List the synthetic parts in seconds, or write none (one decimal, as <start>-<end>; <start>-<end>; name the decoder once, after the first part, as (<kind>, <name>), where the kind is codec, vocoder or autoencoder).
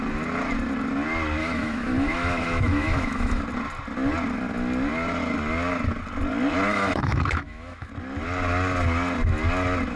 1.4-3.4 (autoencoder, DAC-VAE); 6.7-7.9